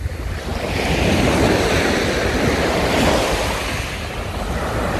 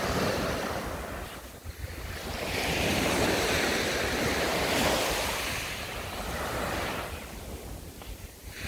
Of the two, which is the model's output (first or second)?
second